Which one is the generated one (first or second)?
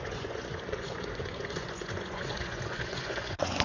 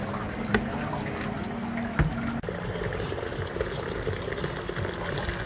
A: first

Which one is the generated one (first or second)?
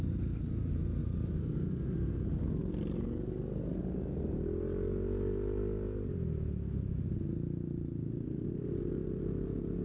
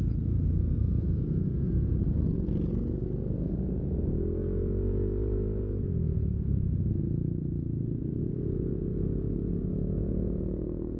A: second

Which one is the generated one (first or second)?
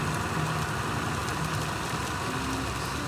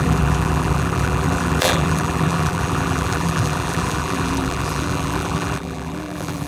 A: second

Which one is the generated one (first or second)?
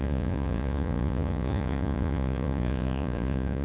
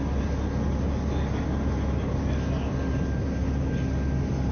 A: first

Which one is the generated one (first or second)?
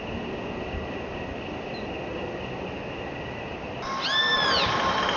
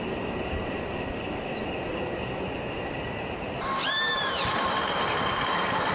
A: second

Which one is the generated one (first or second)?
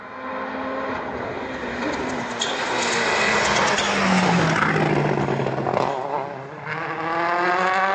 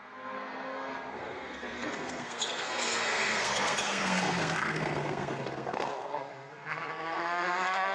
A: second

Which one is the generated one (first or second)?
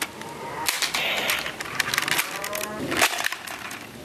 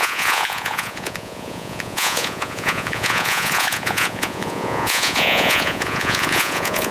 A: second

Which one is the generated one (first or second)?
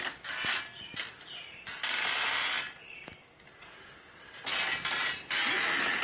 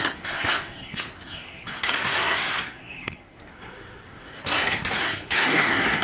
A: second